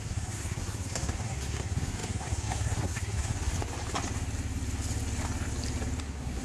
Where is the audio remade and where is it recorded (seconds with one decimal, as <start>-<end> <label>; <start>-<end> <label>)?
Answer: 0.0-3.5 remade; 3.5-6.0 recorded; 6.0-6.4 remade

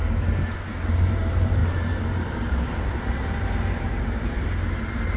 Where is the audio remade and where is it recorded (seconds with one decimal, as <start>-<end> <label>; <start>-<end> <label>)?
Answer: 0.0-5.2 remade

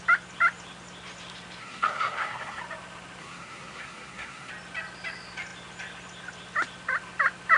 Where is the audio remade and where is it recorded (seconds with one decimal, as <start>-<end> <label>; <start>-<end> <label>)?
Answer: 0.0-1.6 recorded; 1.6-2.6 remade; 2.6-3.2 recorded; 3.2-4.5 remade; 4.5-7.6 recorded

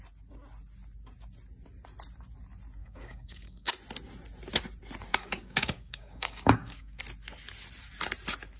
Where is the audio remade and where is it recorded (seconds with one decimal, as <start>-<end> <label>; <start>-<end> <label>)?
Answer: 0.0-2.8 recorded; 2.8-3.7 remade; 3.7-5.1 recorded; 5.1-7.0 remade; 7.0-8.6 recorded

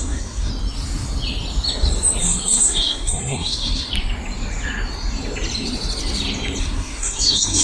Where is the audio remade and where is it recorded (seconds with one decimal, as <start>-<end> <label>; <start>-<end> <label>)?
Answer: 0.0-0.5 remade; 0.5-2.2 recorded; 2.2-3.9 remade; 3.9-6.6 recorded; 6.6-7.6 remade

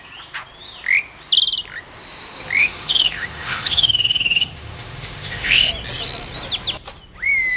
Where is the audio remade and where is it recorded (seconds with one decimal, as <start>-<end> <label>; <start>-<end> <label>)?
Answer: 0.0-2.6 recorded; 2.6-5.7 remade; 5.7-7.6 recorded